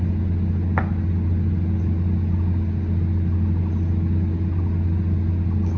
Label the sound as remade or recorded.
recorded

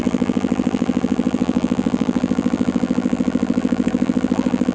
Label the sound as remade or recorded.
remade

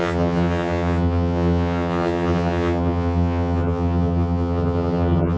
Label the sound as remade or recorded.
remade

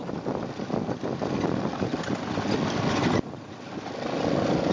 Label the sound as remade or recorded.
recorded